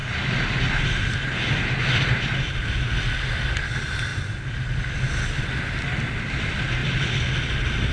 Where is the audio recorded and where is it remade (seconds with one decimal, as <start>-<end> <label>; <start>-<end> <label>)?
0.0-7.9 recorded